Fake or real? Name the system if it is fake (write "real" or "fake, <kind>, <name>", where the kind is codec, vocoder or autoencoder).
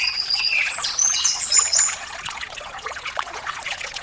fake, vocoder, Vocos